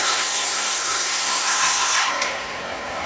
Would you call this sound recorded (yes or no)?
no